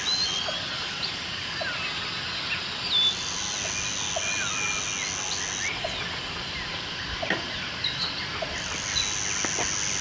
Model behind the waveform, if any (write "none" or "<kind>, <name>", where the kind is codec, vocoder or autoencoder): none